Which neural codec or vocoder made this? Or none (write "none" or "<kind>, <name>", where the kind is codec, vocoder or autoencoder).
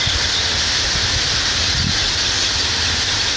none